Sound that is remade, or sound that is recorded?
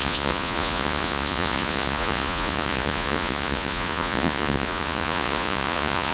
remade